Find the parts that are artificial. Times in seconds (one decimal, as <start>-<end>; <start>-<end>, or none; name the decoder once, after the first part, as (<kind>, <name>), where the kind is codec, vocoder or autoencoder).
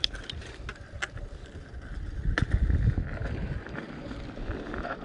0.7-2.3 (vocoder, BigVGAN v2); 3.2-4.3